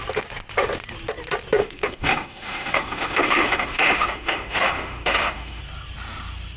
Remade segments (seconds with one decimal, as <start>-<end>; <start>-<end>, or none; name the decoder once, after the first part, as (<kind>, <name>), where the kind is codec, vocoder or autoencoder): 1.6-5.6 (autoencoder, DAC-VAE)